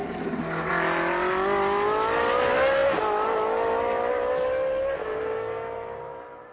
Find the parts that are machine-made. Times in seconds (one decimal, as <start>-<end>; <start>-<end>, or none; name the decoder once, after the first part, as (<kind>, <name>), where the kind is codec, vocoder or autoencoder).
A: 5.0-6.0 (codec, DAC)